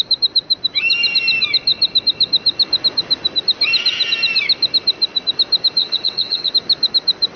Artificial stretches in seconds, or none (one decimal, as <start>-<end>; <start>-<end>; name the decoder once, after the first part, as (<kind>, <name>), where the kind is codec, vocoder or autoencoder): 5.8-6.5 (vocoder, WaveNeXt)